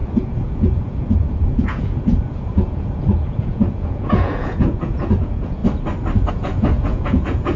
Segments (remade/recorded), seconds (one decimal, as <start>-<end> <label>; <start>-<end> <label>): 0.0-5.6 remade; 5.6-6.3 recorded; 6.3-7.6 remade